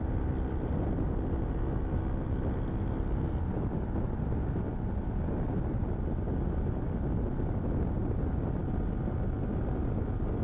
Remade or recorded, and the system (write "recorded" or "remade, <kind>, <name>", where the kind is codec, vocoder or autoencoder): recorded